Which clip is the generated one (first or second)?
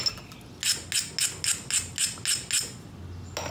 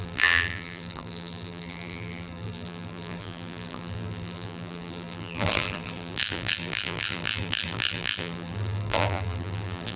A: second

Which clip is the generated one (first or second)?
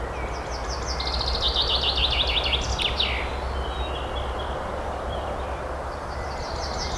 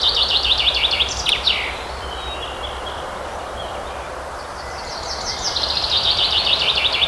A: second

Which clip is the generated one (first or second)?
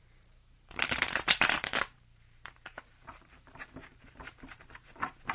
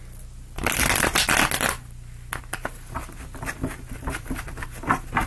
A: first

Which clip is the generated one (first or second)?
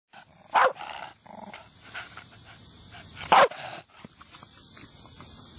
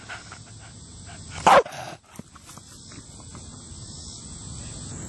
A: first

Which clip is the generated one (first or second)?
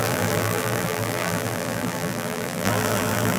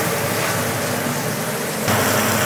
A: first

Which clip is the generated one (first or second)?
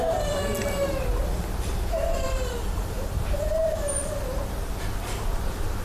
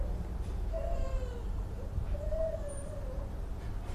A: first